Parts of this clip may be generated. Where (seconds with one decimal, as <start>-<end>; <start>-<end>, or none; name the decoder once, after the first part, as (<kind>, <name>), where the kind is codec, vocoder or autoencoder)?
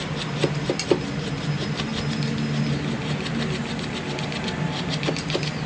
none